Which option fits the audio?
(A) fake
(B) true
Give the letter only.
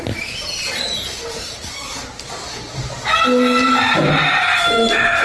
B